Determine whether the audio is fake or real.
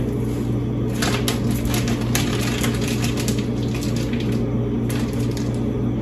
real